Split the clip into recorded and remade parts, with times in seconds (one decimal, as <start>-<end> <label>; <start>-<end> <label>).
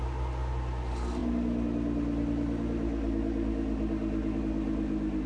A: 0.0-5.3 recorded